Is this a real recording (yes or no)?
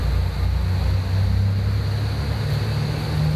yes